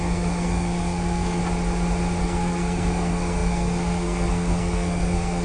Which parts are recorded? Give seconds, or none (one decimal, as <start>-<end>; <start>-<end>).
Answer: 1.4-2.2